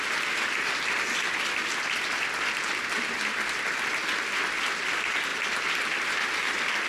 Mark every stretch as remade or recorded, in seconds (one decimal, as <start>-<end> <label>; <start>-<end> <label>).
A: 0.0-6.9 recorded